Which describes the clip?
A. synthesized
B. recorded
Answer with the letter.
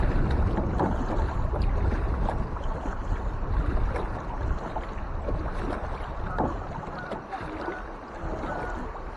B